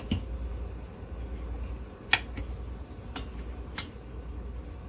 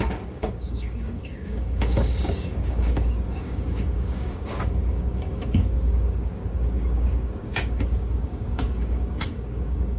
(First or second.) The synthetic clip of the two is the second